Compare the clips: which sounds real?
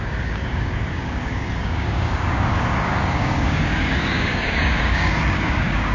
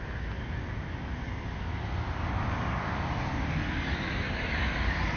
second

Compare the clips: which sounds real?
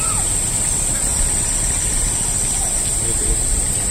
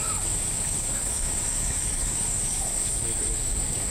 first